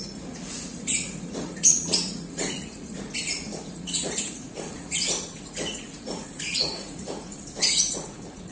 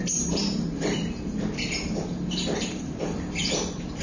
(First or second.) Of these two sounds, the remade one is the first